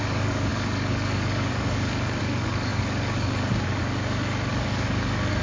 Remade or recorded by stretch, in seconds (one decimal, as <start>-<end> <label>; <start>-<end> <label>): 0.0-5.4 remade